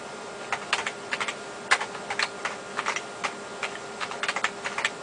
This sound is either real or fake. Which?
real